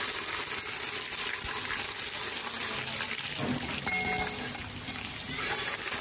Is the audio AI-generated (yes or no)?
no